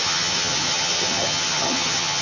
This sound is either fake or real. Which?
fake